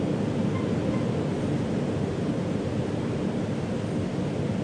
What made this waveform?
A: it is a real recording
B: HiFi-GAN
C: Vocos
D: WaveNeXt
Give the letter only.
A